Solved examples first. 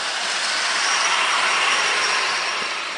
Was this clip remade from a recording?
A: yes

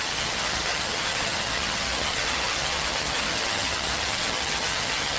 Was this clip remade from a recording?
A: yes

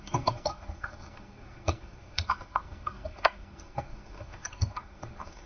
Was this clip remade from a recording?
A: yes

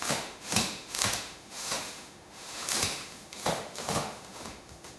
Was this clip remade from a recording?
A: yes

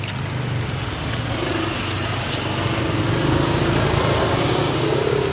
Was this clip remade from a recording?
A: no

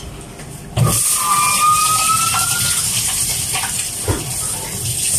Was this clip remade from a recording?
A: no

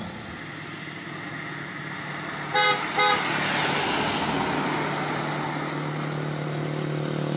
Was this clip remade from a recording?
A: no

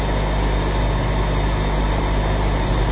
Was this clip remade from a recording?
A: no